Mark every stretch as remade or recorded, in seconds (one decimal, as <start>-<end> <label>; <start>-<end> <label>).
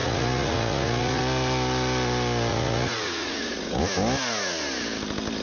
0.0-1.2 remade; 1.2-2.5 recorded; 2.5-3.8 remade; 3.8-5.4 recorded